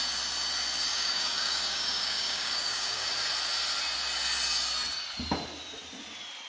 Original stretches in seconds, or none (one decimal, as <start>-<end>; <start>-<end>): 0.0-0.9; 3.1-6.5